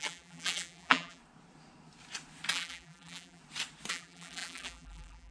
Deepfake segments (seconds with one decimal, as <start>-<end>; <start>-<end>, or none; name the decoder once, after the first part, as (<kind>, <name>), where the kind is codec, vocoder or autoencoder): 0.0-1.2 (vocoder, BigVGAN v2); 2.5-3.4; 3.9-5.3